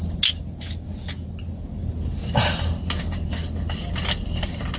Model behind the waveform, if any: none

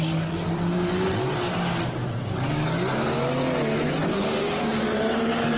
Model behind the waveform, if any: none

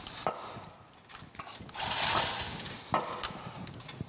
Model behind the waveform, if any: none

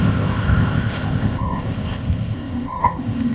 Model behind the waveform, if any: codec, ZipCodec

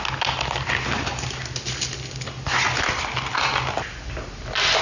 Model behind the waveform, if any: none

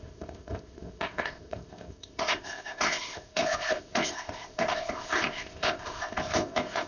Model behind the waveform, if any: codec, ZipCodec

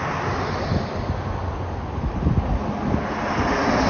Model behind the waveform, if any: none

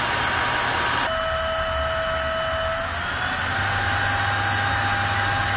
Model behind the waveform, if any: none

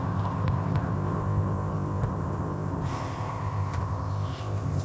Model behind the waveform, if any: codec, ZipCodec